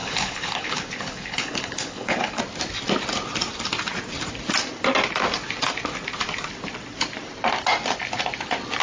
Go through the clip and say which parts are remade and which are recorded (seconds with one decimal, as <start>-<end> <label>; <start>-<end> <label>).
0.0-2.4 remade; 2.4-8.8 recorded

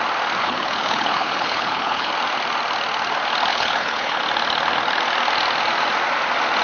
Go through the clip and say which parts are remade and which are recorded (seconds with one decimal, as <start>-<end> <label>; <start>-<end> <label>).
0.0-0.4 recorded; 0.4-2.1 remade; 2.1-3.5 recorded; 3.5-4.2 remade; 4.2-6.6 recorded

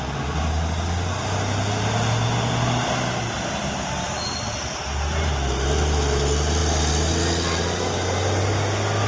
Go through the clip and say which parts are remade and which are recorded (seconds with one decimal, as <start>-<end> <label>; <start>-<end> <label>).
0.0-9.1 recorded

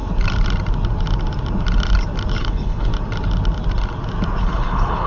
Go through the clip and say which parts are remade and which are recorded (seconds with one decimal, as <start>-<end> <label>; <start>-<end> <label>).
0.0-2.4 recorded; 2.4-2.9 remade; 2.9-4.4 recorded; 4.4-5.1 remade